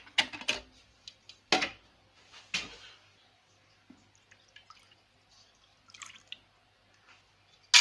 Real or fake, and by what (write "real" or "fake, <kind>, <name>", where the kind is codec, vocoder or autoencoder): real